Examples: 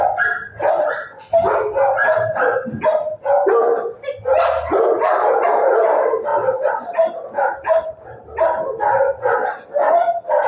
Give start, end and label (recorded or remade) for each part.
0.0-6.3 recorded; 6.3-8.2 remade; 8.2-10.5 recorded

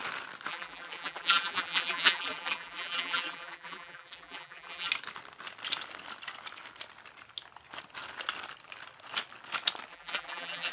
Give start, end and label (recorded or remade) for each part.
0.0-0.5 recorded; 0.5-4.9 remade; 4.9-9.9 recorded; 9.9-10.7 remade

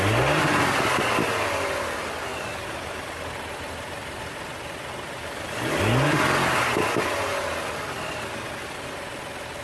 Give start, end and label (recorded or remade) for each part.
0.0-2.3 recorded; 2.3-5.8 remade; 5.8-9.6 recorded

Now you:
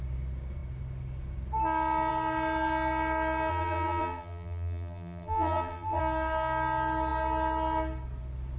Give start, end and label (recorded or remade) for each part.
0.0-3.5 recorded; 3.5-6.0 remade; 6.0-8.6 recorded

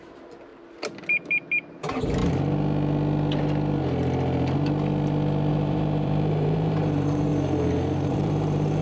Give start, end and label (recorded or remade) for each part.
0.0-0.5 remade; 0.5-1.8 recorded; 1.8-2.2 remade; 2.2-5.5 recorded; 5.5-7.3 remade; 7.3-8.1 recorded; 8.1-8.8 remade

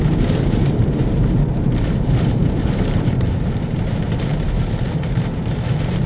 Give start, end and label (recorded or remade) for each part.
0.0-6.1 remade

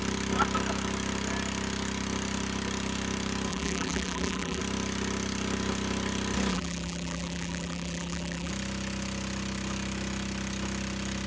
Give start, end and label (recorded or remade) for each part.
0.0-3.5 recorded; 3.5-4.6 remade; 4.6-6.5 recorded; 6.5-8.5 remade; 8.5-11.3 recorded

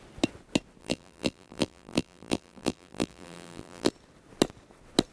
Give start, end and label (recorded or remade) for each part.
0.0-0.8 recorded; 0.8-3.9 remade; 3.9-5.1 recorded